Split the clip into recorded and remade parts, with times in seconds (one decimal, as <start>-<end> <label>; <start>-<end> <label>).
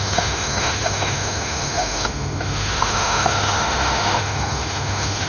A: 0.0-5.3 remade